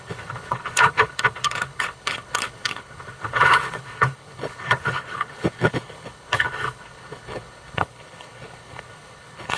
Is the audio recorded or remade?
remade